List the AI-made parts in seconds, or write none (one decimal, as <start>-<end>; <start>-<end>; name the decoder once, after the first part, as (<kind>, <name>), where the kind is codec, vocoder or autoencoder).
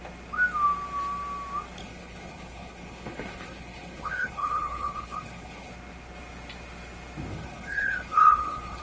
1.8-5.7 (codec, HILCodec); 7.3-8.8